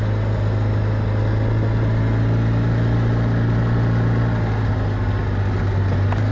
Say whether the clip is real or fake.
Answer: real